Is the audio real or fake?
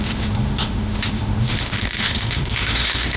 fake